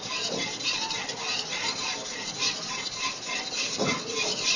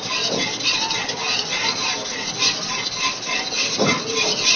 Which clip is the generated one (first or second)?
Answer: first